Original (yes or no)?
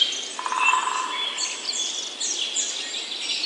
yes